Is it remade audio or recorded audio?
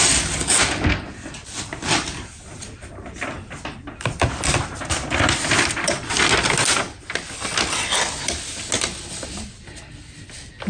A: recorded